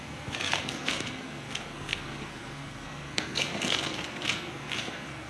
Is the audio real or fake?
fake